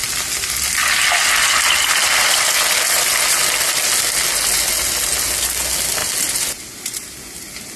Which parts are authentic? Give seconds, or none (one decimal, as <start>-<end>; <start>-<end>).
0.0-7.8